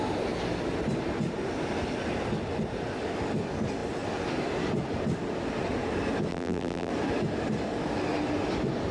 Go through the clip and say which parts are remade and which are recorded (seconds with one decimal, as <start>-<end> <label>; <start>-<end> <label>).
0.0-6.3 recorded; 6.3-6.9 remade; 6.9-8.9 recorded